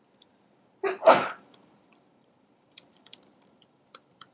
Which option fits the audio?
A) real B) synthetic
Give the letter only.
B